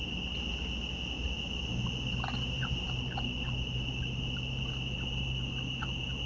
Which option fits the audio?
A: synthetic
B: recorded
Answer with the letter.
B